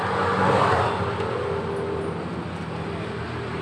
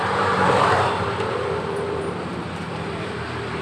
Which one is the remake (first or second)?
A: second